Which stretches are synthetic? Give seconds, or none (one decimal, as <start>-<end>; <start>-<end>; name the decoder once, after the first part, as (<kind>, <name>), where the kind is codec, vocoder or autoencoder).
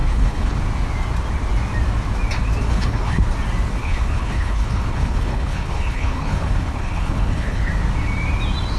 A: 0.0-0.6 (codec, HILCodec); 2.7-3.2; 3.8-7.7